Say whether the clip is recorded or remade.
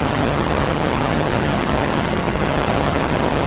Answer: remade